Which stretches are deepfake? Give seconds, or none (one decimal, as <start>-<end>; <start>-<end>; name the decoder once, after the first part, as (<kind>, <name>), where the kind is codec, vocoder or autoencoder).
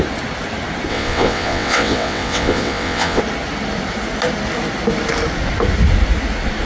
0.9-3.2 (vocoder, WaveNeXt)